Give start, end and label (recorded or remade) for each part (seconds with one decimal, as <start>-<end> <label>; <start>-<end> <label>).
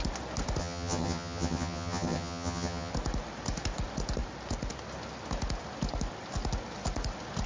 0.0-0.6 recorded; 0.6-2.9 remade; 2.9-7.5 recorded